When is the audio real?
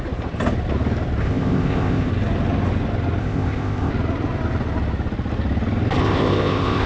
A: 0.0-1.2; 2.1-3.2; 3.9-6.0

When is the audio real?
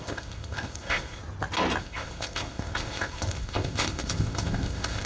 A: 1.2-1.8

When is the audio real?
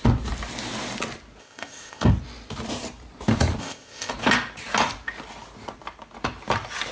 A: 0.0-1.4; 2.1-3.6; 4.1-6.9